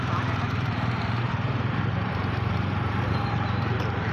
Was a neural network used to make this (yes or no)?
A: yes